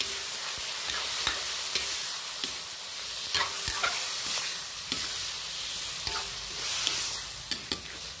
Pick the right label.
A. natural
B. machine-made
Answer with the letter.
A